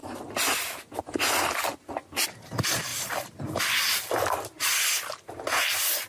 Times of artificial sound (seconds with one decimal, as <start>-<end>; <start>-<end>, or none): none